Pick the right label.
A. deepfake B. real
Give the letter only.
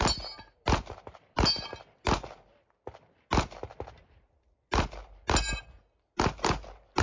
B